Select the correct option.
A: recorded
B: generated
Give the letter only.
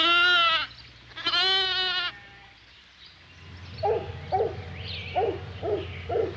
A